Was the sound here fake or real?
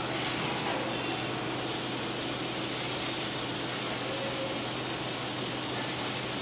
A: real